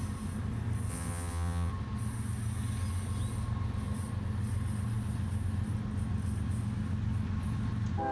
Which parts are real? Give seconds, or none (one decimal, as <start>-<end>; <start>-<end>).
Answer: 0.0-0.9; 1.7-8.1